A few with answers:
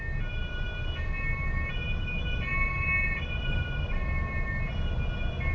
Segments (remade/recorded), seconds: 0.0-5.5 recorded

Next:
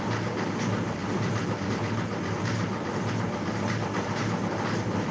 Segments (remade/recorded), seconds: 0.0-5.1 recorded

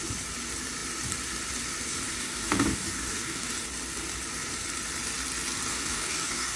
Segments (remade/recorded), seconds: 0.0-2.2 recorded; 2.2-3.5 remade; 3.5-5.7 recorded; 5.7-6.6 remade